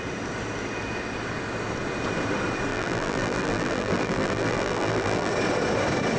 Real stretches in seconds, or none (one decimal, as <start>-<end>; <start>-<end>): 0.0-2.7; 5.3-6.2